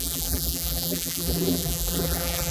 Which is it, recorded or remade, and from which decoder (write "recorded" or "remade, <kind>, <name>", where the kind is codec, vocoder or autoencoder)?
remade, vocoder, BigVGAN v2